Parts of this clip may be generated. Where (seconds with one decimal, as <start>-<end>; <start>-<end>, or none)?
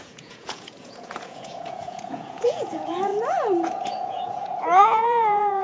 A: 0.0-3.1; 3.7-5.6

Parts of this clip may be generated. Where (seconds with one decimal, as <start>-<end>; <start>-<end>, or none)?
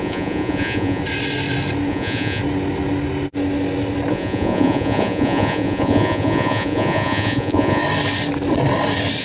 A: 0.0-1.0; 1.9-2.4; 4.1-7.8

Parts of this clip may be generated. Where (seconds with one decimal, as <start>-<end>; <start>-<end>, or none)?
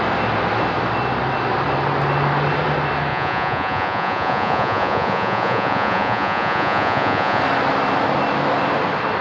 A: 3.1-7.4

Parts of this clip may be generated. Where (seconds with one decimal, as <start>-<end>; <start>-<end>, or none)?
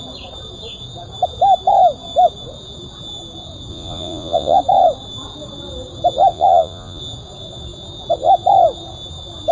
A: 3.7-4.6; 6.3-7.0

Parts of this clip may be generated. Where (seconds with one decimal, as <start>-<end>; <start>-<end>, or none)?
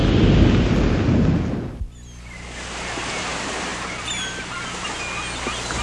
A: none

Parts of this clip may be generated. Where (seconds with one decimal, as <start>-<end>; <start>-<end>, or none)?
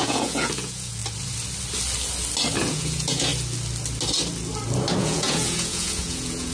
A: 0.0-1.0; 2.6-3.3; 5.0-6.5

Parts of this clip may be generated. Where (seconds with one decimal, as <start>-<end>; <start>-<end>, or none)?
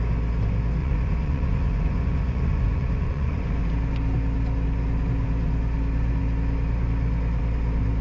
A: 0.8-3.7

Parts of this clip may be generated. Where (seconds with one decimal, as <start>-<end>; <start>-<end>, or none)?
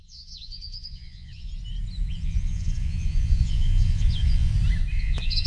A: 0.0-1.5; 2.1-4.5; 5.0-5.5